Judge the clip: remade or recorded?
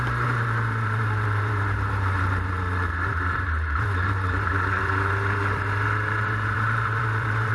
remade